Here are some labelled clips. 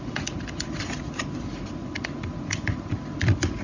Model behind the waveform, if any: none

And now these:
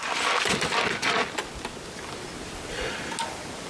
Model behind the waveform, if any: none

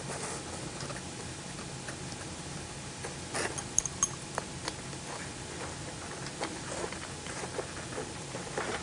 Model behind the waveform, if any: none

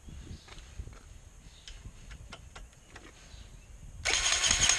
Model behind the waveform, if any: none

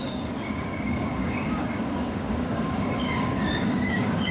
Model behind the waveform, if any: codec, DAC